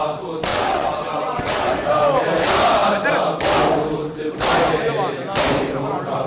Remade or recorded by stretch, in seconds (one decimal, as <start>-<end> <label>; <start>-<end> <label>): 0.0-0.5 recorded; 0.5-1.7 remade; 1.7-6.3 recorded